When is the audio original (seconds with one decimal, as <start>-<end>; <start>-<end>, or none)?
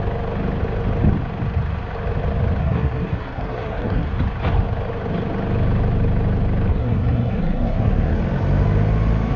0.0-2.6; 4.1-6.7; 8.1-9.4